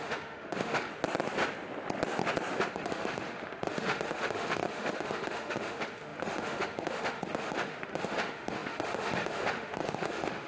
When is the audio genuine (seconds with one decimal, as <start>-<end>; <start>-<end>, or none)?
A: 0.9-2.7